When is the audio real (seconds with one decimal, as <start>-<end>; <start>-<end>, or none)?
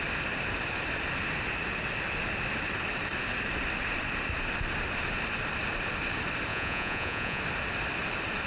0.0-6.5; 7.4-8.5